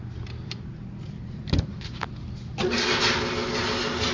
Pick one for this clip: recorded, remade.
recorded